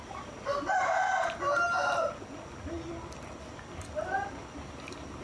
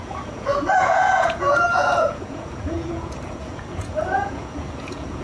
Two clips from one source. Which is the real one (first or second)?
first